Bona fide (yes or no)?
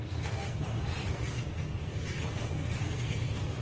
no